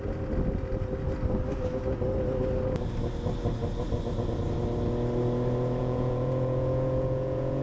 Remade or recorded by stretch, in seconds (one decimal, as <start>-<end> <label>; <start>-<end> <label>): 0.0-5.8 recorded; 5.8-7.6 remade